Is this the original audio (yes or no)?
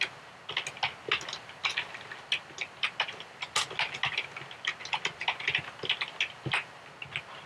yes